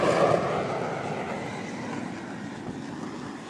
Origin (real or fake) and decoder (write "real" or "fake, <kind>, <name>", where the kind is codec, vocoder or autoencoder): real